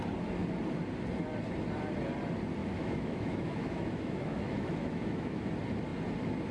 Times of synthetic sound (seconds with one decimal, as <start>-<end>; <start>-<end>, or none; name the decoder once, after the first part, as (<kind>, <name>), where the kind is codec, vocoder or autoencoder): 2.6-5.5 (autoencoder, DAC-VAE)

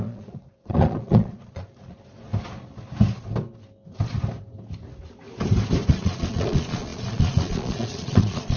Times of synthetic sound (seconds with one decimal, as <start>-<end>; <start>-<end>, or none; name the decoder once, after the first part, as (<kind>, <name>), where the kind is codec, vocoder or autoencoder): 0.0-2.3 (vocoder, Vocos); 5.9-8.6